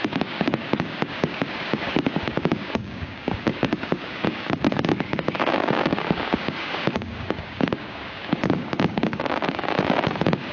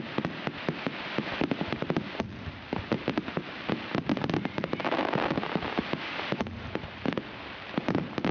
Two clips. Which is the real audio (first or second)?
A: second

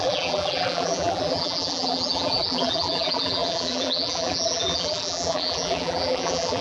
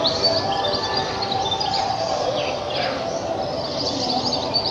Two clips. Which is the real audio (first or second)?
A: second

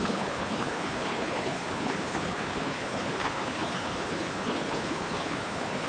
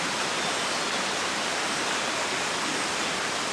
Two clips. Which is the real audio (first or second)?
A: second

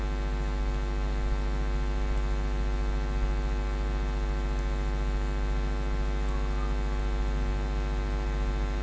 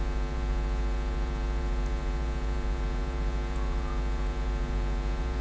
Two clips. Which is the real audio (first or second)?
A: first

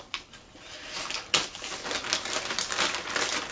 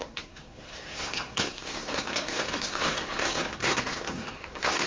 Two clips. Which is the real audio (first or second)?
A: first